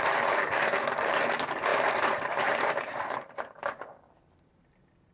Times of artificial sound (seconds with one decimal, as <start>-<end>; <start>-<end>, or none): 1.7-3.8